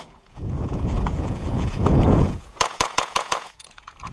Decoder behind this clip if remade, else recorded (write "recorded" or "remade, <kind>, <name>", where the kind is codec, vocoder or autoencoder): remade, vocoder, Vocos